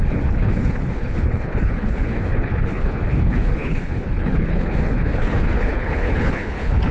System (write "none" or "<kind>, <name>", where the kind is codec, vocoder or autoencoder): codec, HILCodec